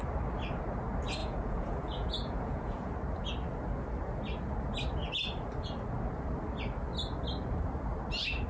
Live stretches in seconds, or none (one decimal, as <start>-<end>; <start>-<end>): 0.0-1.2; 2.9-8.5